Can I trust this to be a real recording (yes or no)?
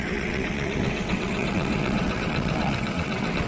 no